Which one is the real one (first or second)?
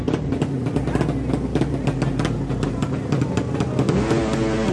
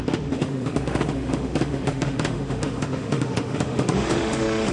first